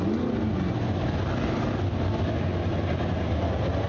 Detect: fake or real real